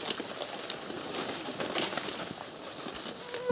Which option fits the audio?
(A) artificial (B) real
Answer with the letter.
B